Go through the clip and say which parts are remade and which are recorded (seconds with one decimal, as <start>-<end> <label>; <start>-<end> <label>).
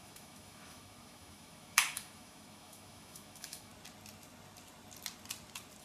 0.0-3.7 remade; 3.7-5.8 recorded